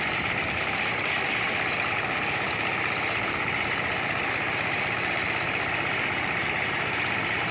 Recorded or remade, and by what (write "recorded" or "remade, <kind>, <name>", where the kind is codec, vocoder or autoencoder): recorded